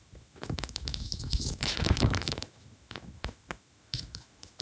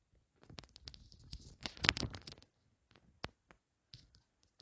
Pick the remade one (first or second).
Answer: first